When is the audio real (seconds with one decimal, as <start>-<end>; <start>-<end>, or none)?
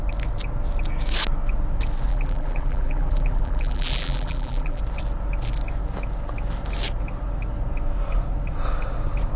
0.0-2.1; 4.8-9.4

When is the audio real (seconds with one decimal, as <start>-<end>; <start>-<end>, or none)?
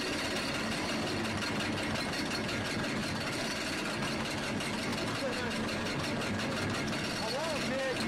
0.0-3.0; 3.6-4.9; 7.4-8.1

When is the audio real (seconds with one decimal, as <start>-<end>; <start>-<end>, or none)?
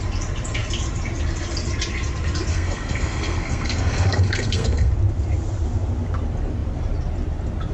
0.0-2.5; 4.9-7.7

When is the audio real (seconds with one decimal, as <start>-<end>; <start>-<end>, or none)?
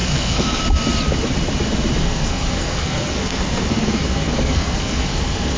0.6-2.0